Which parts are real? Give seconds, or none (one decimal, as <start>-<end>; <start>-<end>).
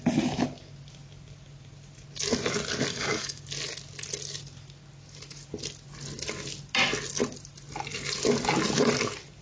0.0-2.9; 3.4-9.4